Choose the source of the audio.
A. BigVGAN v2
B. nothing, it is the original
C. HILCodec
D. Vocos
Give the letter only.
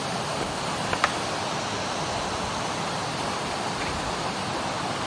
B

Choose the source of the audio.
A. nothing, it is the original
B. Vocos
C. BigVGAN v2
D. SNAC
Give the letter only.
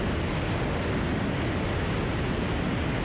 A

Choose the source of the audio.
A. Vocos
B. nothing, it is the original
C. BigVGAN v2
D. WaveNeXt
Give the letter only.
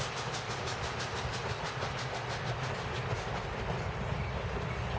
B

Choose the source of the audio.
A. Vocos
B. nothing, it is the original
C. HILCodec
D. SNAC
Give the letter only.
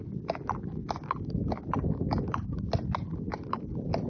B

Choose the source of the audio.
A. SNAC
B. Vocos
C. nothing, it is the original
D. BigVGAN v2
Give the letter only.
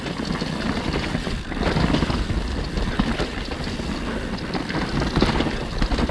C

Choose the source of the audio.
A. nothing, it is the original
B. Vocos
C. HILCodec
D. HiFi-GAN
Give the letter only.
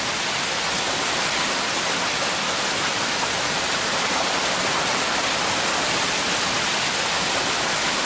A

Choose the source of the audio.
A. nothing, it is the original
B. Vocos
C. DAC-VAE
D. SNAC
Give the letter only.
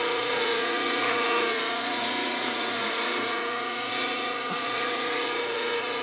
B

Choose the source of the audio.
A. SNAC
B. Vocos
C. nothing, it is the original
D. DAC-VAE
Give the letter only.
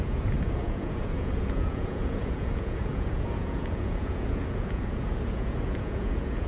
B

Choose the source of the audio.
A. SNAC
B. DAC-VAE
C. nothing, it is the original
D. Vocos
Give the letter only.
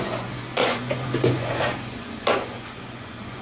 D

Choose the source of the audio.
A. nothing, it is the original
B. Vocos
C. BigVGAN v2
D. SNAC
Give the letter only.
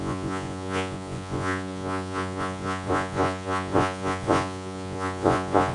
B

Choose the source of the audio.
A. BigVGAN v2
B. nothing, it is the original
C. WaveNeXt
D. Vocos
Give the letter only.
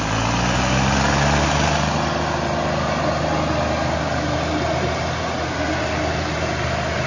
B